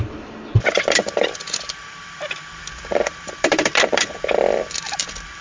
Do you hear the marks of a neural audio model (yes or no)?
yes